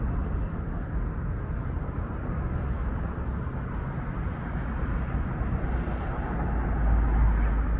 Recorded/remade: recorded